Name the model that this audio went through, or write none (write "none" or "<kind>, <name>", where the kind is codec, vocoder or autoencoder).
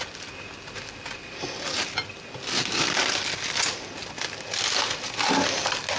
none